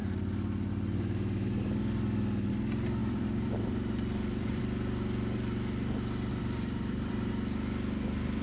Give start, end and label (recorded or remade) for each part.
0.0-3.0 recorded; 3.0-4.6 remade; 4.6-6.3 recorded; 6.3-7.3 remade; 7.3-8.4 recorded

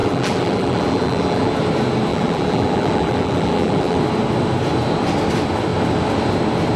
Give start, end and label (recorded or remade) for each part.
0.0-1.5 remade; 1.5-2.1 recorded; 2.1-4.0 remade; 4.0-6.8 recorded

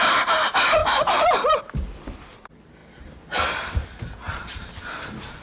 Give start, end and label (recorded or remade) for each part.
0.0-0.8 recorded; 0.8-1.6 remade; 1.6-2.8 recorded; 2.8-3.8 remade; 3.8-4.4 recorded; 4.4-5.4 remade